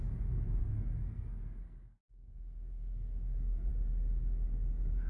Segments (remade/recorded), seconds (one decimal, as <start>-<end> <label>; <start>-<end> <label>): 0.0-0.6 recorded; 0.6-3.7 remade; 3.7-5.1 recorded